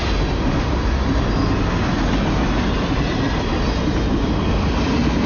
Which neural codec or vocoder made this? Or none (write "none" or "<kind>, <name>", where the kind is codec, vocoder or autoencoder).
none